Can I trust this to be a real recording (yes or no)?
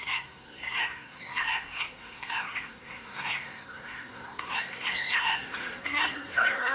no